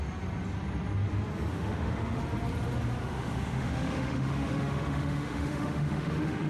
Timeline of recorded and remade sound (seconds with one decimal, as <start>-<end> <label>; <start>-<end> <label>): 0.0-1.5 recorded; 1.5-2.2 remade; 2.2-3.0 recorded; 3.0-6.5 remade